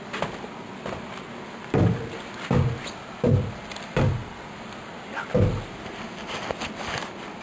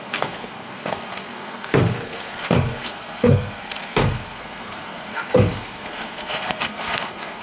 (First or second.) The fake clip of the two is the second